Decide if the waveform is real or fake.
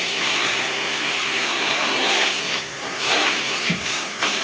fake